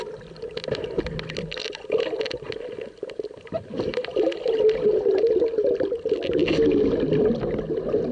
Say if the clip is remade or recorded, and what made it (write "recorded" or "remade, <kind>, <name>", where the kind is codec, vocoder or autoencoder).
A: recorded